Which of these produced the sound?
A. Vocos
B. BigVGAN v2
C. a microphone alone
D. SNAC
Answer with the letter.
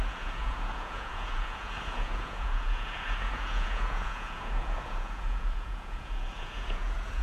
A